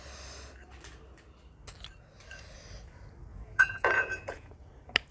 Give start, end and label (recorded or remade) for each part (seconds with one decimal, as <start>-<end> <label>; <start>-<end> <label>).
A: 0.0-3.3 recorded; 3.3-4.5 remade; 4.5-5.1 recorded